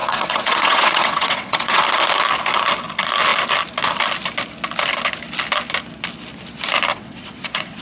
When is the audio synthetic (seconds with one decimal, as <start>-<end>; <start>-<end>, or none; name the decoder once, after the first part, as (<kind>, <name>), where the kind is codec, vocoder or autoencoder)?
0.0-1.8 (vocoder, WaveNeXt); 6.9-7.8